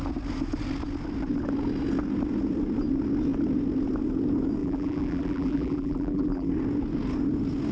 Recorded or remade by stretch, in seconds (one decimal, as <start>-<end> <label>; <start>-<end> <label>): 0.0-4.6 recorded; 4.6-6.5 remade; 6.5-7.7 recorded